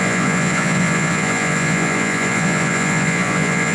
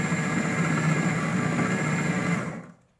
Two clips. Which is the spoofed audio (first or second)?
first